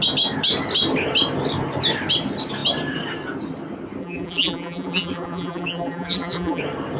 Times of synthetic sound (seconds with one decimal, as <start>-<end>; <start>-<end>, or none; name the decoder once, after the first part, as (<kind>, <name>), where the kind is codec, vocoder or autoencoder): 4.0-6.6 (vocoder, BigVGAN v2)